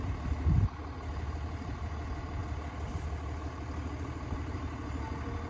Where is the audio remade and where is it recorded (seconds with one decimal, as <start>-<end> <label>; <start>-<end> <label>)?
0.0-5.5 recorded